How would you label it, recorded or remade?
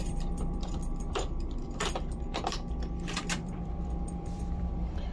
remade